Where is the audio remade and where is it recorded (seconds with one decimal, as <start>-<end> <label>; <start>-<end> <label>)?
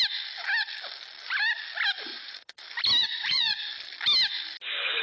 0.0-2.1 recorded; 2.1-2.6 remade; 2.6-3.0 recorded; 3.0-3.6 remade; 3.6-5.0 recorded